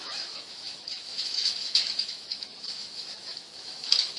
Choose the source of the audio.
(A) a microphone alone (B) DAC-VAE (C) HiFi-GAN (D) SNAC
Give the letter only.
B